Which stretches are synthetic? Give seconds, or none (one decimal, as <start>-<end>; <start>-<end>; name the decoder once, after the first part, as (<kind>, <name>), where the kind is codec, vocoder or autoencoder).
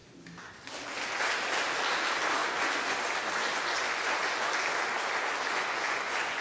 2.4-3.0 (vocoder, Vocos); 3.4-4.5; 5.5-6.4